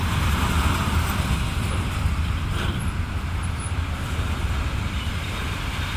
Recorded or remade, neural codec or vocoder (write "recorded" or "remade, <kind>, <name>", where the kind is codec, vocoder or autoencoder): recorded